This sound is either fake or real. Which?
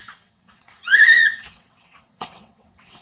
fake